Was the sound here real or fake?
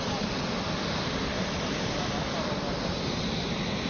real